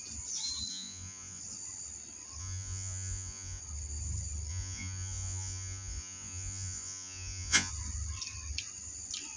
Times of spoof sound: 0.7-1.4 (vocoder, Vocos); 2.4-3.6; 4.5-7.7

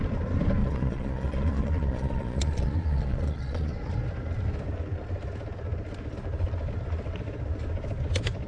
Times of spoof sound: 0.6-3.7 (vocoder, Vocos)

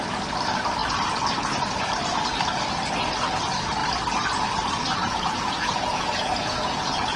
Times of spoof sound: 5.0-7.2 (vocoder, Vocos)

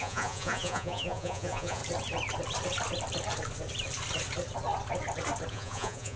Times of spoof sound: 0.0-1.8 (vocoder, Vocos); 5.5-6.2

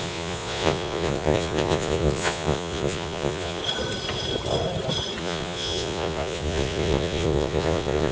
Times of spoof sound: 0.0-3.6 (vocoder, Vocos); 5.2-8.1

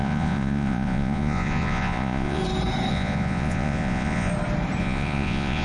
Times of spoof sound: 0.0-2.4 (vocoder, Vocos); 2.9-4.3; 4.8-5.6

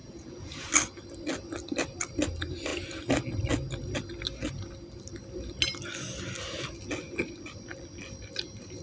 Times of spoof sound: 0.0-0.7 (vocoder, Vocos)